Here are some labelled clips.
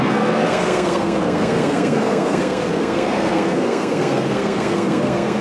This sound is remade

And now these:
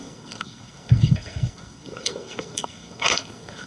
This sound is remade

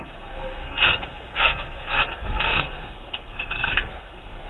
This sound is remade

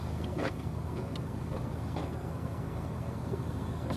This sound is remade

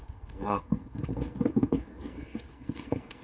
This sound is remade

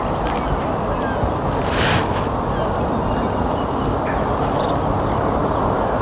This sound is recorded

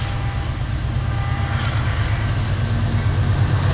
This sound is recorded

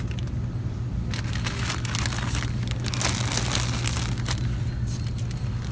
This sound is recorded